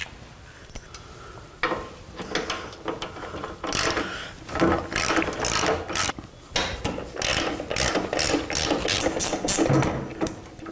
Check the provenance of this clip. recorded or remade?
recorded